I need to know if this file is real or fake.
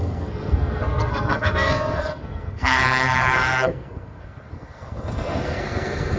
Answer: fake